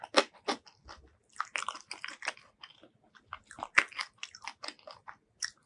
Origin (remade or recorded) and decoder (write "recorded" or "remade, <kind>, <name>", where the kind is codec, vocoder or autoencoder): recorded